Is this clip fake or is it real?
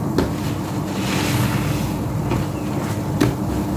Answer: real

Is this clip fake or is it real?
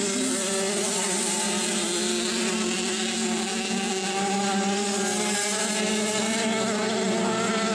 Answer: real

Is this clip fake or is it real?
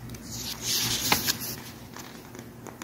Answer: real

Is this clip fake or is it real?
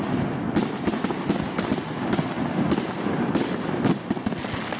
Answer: real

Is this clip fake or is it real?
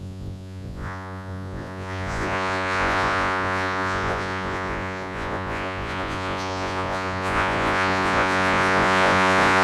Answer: fake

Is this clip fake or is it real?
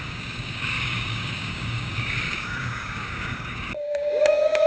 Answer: fake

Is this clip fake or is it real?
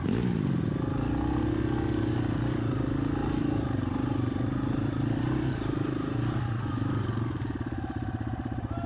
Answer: real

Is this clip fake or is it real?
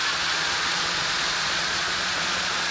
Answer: fake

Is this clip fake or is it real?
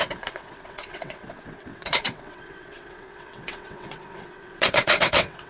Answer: fake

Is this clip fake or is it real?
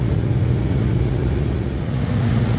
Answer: fake